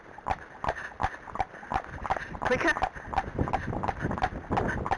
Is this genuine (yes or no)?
yes